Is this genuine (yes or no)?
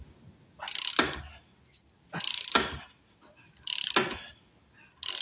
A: yes